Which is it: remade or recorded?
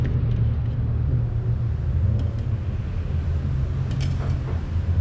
recorded